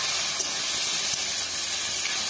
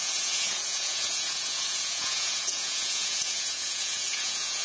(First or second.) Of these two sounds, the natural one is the first